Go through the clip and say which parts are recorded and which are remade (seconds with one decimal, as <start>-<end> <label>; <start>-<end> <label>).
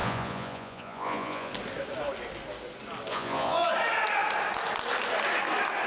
0.0-1.5 remade; 1.5-3.1 recorded; 3.1-3.7 remade; 3.7-5.9 recorded